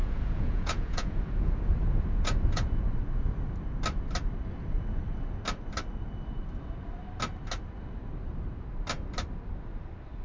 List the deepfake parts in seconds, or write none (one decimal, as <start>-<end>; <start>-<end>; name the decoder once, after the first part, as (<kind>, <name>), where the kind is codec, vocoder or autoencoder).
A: 0.0-2.8 (vocoder, Vocos)

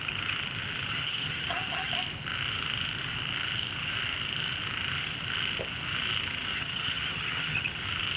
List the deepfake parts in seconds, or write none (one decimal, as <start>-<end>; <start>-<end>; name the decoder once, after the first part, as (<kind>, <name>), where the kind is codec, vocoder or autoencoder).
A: 0.9-1.9 (vocoder, HiFi-GAN); 6.5-7.6

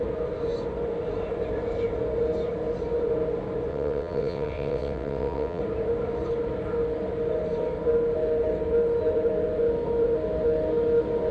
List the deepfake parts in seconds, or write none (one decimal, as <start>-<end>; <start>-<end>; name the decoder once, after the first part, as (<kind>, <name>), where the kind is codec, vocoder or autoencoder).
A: 3.7-5.6 (vocoder, WaveNeXt)

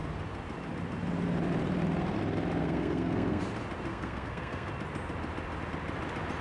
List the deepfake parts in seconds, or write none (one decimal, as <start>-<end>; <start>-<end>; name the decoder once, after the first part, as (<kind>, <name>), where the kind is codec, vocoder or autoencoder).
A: 2.6-3.4 (codec, SNAC); 3.9-4.7

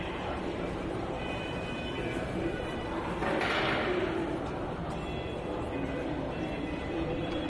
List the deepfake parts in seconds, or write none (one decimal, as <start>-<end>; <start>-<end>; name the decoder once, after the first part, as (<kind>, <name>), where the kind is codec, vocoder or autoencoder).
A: 0.0-3.2 (vocoder, BigVGAN v2); 6.8-7.5

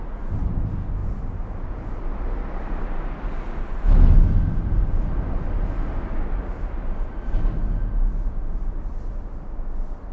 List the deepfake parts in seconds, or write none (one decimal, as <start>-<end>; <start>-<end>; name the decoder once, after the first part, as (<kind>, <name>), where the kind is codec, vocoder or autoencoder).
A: none

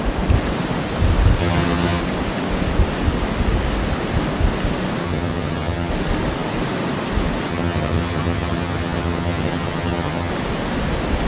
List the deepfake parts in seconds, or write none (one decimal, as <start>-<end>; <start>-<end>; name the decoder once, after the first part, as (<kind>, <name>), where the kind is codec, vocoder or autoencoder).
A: 1.4-2.0 (vocoder, HiFi-GAN); 5.0-5.9; 7.5-10.3

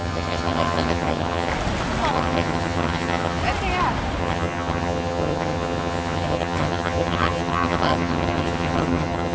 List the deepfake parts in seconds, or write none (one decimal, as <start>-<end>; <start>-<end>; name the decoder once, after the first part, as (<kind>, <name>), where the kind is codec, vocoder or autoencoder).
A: 0.0-1.5 (vocoder, HiFi-GAN); 2.1-3.4; 4.2-9.3